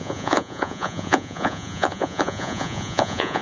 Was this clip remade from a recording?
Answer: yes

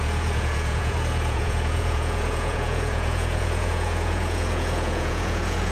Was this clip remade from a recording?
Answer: yes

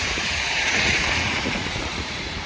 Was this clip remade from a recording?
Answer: yes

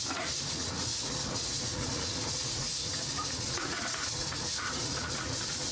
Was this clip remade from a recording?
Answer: yes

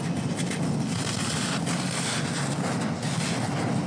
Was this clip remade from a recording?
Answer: no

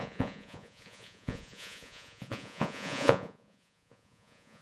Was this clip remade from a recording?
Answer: yes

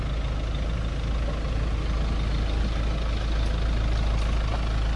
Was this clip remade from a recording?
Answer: no